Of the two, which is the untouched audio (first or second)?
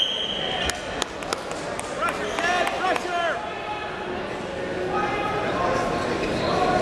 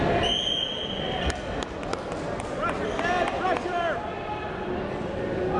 first